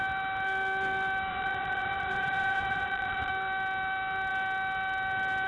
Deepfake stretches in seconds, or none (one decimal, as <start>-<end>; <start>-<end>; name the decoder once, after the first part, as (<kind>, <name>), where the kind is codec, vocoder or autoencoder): 1.3-3.3 (vocoder, Vocos)